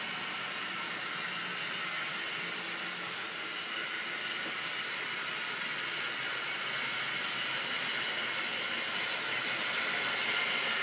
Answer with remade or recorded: recorded